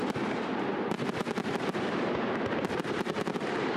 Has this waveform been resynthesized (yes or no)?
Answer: no